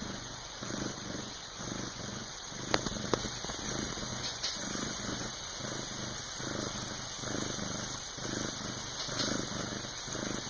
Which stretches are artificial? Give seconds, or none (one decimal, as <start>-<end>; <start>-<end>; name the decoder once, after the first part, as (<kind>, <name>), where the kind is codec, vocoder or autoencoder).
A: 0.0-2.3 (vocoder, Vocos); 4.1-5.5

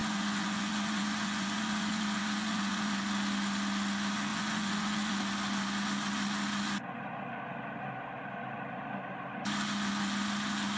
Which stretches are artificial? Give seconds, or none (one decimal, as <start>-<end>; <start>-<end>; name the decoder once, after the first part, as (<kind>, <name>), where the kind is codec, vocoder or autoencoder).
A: 0.0-2.9 (vocoder, Vocos); 4.3-5.1

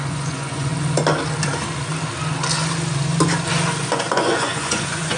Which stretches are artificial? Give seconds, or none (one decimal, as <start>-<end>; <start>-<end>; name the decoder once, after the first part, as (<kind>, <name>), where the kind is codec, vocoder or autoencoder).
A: 0.0-0.7 (vocoder, Vocos); 3.8-5.2

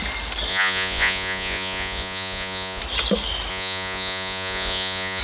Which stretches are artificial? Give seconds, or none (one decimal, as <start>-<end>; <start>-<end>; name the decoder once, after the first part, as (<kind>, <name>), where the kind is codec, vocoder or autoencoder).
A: 0.5-2.8 (vocoder, Vocos); 3.5-5.2

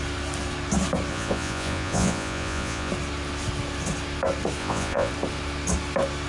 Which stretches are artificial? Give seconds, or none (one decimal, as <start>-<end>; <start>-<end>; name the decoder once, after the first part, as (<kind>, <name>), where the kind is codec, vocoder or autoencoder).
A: 1.1-2.9 (vocoder, Vocos); 4.6-5.1

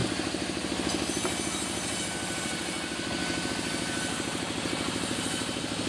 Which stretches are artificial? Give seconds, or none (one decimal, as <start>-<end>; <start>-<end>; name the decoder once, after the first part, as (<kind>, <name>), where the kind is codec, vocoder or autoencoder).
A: none

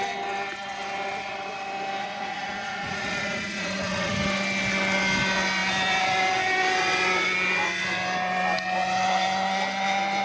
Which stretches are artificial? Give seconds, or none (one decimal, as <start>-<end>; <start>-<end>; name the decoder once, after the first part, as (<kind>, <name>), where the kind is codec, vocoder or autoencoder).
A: 2.0-4.1 (vocoder, Vocos)